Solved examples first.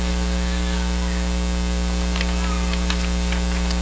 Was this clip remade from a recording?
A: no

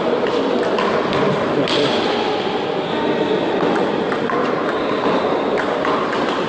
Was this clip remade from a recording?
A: no